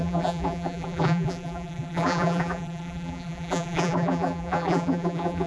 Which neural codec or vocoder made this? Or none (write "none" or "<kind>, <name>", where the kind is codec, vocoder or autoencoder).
vocoder, BigVGAN v2